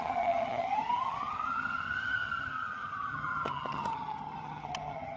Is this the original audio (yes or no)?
no